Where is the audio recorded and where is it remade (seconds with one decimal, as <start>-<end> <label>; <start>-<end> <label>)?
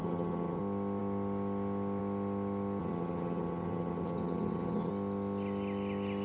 0.0-0.6 remade; 0.6-2.8 recorded; 2.8-4.9 remade; 4.9-6.2 recorded